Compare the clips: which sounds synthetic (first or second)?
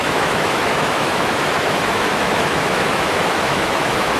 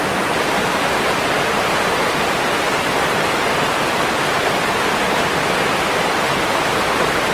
first